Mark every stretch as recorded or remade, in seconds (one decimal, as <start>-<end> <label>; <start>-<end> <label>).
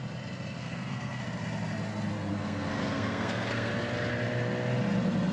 0.0-0.6 recorded; 0.6-1.2 remade; 1.2-2.3 recorded; 2.3-3.7 remade; 3.7-5.3 recorded